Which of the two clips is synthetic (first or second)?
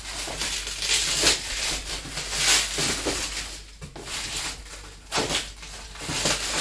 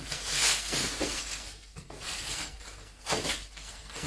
second